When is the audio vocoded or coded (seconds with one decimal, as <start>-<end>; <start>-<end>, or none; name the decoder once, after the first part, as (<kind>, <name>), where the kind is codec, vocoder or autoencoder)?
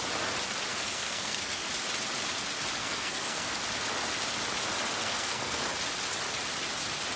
0.7-1.7 (codec, SNAC); 2.8-3.6; 5.0-5.6